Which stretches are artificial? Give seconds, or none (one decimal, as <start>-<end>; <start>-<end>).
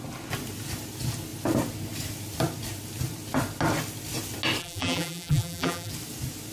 4.6-5.9